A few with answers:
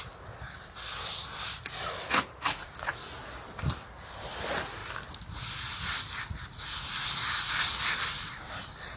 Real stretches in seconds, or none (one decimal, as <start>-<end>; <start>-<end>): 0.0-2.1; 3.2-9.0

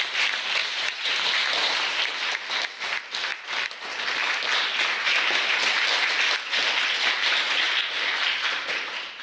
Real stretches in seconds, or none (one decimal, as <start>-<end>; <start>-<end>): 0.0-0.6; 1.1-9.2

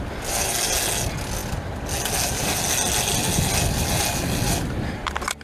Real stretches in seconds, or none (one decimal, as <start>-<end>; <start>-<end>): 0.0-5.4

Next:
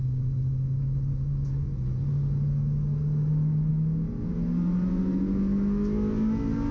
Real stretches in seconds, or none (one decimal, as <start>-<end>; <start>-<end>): 0.0-6.7

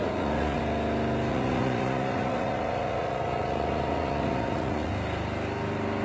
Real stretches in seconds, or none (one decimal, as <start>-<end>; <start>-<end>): 0.6-1.3; 4.9-6.0

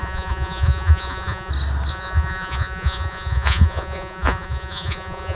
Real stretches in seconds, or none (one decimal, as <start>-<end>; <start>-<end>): 1.5-1.9